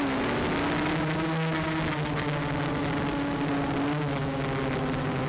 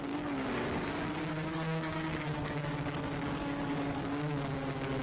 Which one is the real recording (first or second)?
first